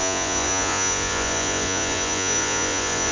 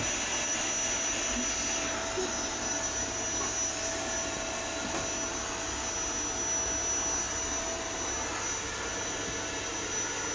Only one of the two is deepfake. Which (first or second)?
first